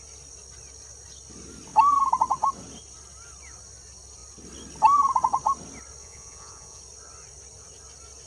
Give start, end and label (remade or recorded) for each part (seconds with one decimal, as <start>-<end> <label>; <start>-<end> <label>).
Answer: 0.0-6.0 recorded; 6.0-6.8 remade; 6.8-8.3 recorded